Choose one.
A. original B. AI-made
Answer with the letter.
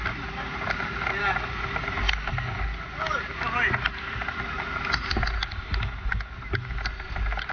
A